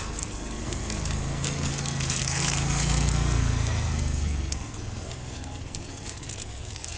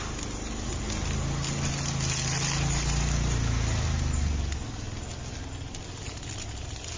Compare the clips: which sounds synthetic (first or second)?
first